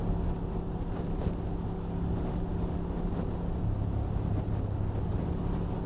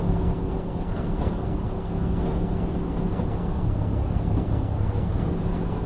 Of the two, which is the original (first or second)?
first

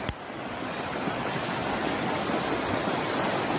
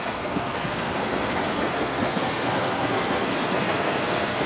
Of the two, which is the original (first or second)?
first